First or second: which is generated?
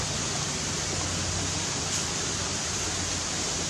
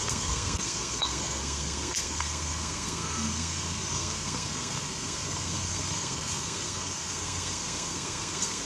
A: second